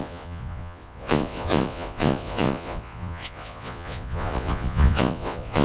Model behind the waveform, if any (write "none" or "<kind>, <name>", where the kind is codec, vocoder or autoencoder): vocoder, Vocos